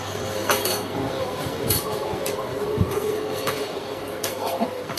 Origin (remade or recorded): remade